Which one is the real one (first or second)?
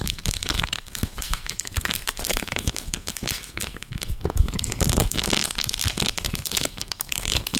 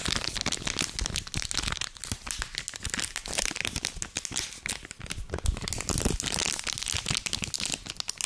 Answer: second